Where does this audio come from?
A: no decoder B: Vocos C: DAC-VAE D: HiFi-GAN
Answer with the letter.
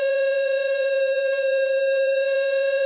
B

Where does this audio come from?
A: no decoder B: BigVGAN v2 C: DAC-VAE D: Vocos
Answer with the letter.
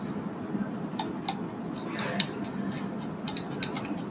A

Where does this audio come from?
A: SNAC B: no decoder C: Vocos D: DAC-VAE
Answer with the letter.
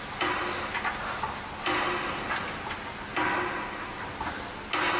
B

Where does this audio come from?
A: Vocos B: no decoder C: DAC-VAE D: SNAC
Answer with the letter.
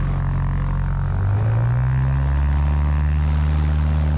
B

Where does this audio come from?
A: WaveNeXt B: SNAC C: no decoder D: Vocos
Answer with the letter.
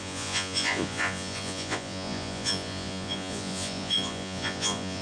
D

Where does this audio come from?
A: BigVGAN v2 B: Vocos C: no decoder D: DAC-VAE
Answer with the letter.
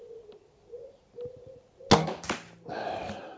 C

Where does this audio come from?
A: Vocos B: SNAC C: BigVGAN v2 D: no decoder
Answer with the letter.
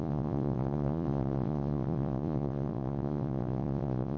A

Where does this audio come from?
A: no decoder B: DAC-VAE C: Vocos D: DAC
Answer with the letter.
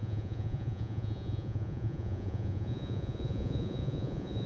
C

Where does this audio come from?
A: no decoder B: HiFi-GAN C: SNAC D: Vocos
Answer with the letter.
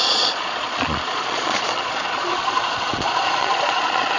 D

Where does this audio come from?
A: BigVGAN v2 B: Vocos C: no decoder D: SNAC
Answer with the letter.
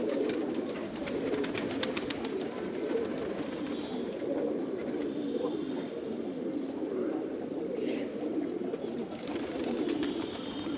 C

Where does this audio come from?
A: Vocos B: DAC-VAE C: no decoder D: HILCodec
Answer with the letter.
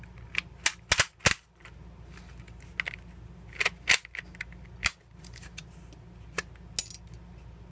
C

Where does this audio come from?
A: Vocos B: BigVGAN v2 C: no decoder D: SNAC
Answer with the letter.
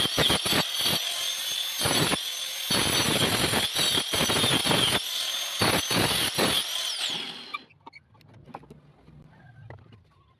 C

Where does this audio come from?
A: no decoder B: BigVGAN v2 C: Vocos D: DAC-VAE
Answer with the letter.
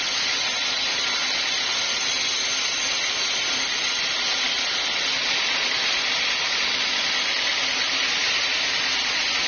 A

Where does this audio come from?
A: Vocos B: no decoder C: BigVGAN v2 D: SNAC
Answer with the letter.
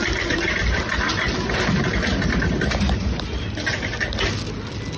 B